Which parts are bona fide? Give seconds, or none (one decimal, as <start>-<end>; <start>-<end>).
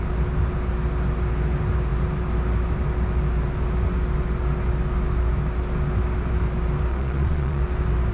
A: 0.0-6.9; 7.6-8.1